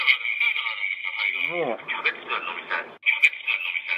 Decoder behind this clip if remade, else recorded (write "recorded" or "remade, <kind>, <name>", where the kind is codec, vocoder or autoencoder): recorded